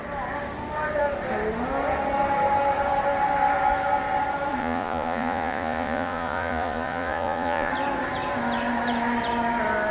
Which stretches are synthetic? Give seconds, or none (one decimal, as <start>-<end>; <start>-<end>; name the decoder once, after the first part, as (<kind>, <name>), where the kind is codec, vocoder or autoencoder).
4.6-7.7 (vocoder, Vocos)